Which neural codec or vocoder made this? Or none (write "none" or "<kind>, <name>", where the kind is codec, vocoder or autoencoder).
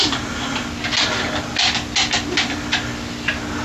none